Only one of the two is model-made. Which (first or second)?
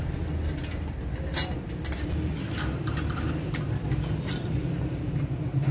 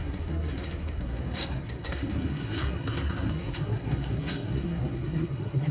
second